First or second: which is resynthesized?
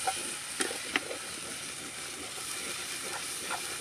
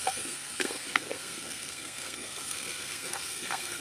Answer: second